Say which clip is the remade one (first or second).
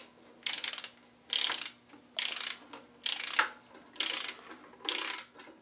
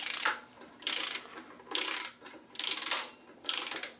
second